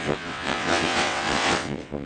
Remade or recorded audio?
remade